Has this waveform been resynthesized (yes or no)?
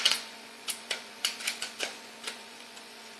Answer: yes